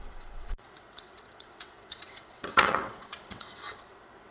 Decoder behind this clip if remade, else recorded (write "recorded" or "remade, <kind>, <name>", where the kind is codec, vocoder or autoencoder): remade, vocoder, WaveNeXt